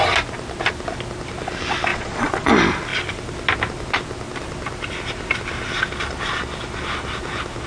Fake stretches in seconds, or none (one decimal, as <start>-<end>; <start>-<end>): 1.9-2.5